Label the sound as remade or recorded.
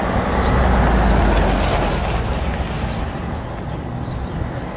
recorded